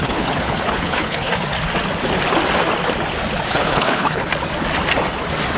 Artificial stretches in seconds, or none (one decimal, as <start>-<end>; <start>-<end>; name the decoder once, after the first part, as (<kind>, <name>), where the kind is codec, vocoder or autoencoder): 0.0-1.3 (codec, HILCodec); 3.5-4.3